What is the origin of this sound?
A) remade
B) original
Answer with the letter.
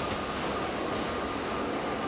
B